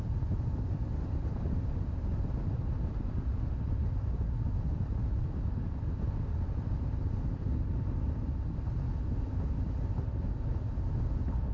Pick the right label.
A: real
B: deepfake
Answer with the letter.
A